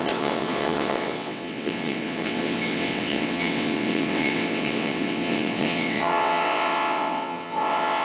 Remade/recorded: remade